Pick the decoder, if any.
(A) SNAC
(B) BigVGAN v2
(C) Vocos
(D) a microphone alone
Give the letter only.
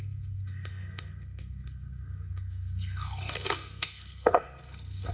A